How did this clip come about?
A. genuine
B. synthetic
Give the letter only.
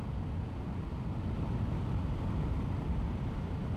A